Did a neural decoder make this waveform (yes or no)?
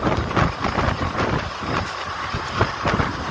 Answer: no